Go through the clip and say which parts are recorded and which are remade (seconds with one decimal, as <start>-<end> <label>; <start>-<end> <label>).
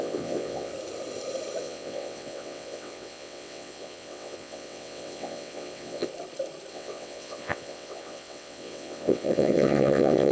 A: 0.0-0.7 remade; 0.7-1.6 recorded; 1.6-6.1 remade; 6.1-6.7 recorded; 6.7-10.3 remade